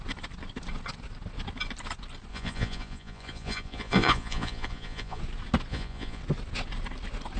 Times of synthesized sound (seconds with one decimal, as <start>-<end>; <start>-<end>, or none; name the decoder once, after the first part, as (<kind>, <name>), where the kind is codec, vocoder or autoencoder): 2.3-5.2 (vocoder, Vocos); 5.7-6.2